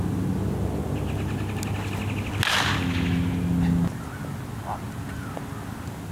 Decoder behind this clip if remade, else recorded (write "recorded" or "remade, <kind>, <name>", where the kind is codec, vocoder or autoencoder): recorded